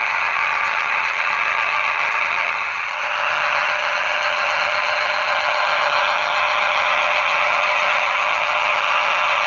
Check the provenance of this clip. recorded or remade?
remade